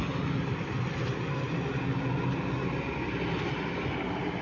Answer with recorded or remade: recorded